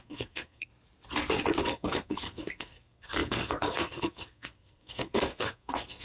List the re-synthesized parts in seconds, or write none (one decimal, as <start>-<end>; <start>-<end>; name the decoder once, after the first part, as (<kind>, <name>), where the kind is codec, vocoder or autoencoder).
0.0-0.7 (codec, SNAC); 1.6-6.0